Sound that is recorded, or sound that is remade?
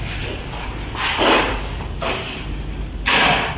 recorded